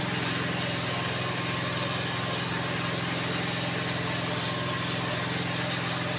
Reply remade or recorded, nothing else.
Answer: recorded